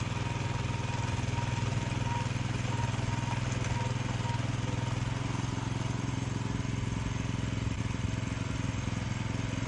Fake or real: real